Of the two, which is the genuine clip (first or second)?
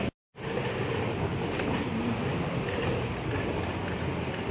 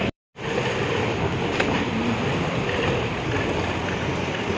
first